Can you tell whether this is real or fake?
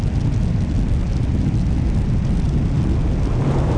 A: real